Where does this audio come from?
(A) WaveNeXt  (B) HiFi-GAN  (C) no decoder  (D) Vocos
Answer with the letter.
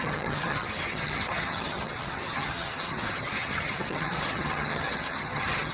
B